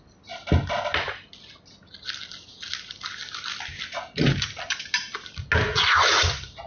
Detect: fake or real real